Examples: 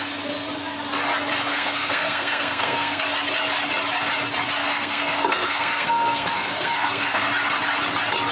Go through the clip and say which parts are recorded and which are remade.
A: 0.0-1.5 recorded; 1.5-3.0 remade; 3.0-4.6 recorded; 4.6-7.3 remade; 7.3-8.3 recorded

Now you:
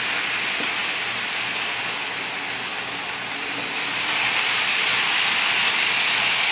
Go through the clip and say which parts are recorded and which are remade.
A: 0.0-6.5 recorded

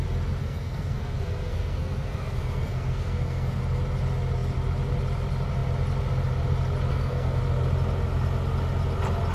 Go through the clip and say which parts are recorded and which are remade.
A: 0.0-0.4 recorded; 0.4-3.6 remade; 3.6-6.9 recorded; 6.9-7.4 remade; 7.4-9.3 recorded

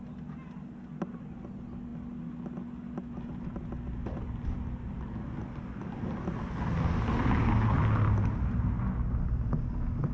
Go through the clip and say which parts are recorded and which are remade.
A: 0.0-10.1 recorded

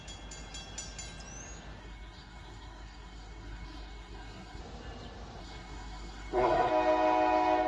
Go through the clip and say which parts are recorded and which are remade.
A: 0.0-1.8 recorded; 1.8-4.6 remade; 4.6-5.4 recorded; 5.4-6.7 remade; 6.7-7.7 recorded